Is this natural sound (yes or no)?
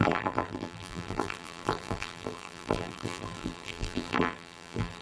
no